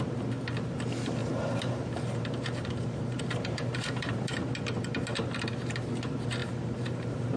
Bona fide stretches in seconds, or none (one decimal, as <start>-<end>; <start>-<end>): 0.0-1.2; 4.3-6.4